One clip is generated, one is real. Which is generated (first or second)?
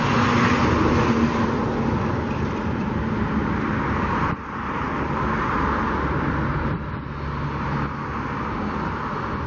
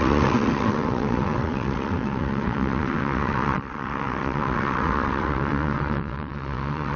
second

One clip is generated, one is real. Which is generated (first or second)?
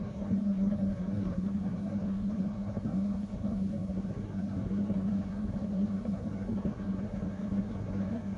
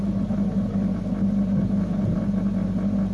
first